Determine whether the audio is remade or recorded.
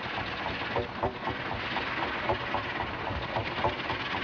recorded